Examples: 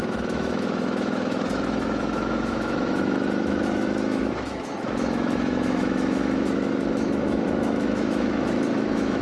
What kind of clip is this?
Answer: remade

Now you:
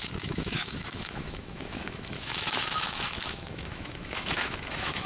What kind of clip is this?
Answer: remade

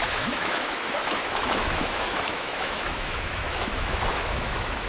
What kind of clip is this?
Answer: remade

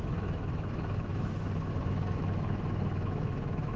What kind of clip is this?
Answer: remade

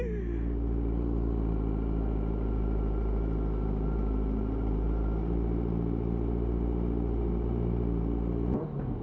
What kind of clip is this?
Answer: recorded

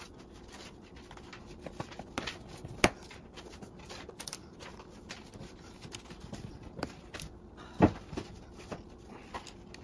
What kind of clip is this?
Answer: recorded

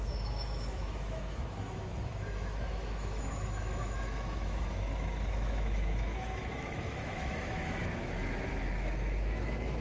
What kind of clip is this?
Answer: remade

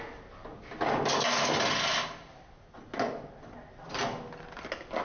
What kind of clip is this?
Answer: recorded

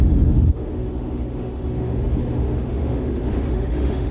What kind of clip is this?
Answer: remade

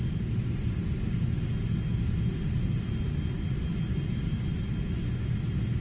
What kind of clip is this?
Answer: recorded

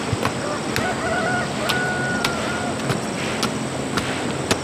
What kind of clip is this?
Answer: recorded